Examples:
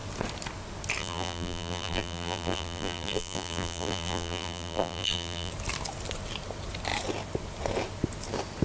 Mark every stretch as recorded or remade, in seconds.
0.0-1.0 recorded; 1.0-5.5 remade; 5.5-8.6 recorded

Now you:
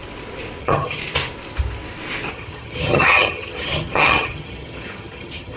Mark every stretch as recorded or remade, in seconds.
0.0-0.6 recorded; 0.6-1.0 remade; 1.0-2.3 recorded; 2.3-5.6 remade

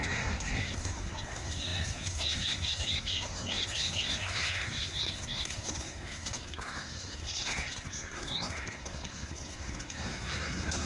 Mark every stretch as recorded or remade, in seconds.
0.0-10.9 remade

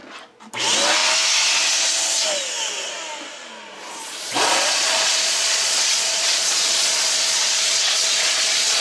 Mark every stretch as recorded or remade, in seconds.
0.0-4.0 recorded; 4.0-8.8 remade

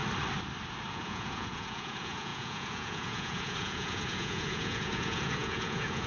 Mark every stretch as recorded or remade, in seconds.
0.0-0.9 recorded; 0.9-6.1 remade